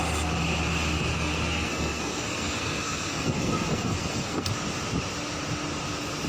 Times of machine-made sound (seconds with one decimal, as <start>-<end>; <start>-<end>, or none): 1.1-4.5